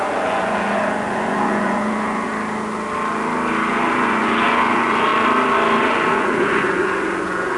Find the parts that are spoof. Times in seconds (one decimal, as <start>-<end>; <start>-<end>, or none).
0.0-2.3; 3.7-5.1; 5.8-7.6